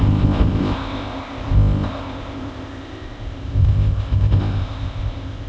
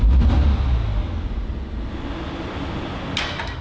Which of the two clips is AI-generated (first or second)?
first